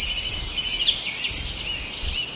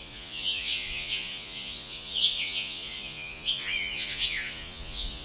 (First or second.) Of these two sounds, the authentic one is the first